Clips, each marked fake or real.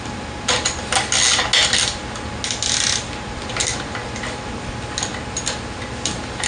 real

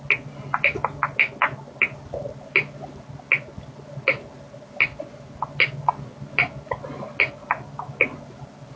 real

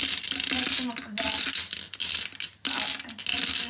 real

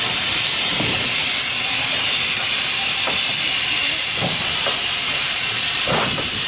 fake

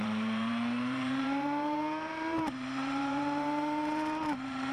fake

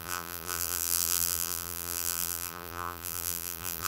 fake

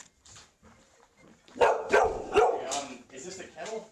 fake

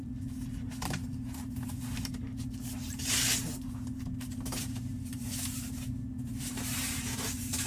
fake